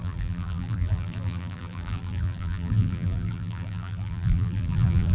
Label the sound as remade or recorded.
remade